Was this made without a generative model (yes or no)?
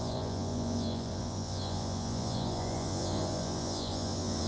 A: no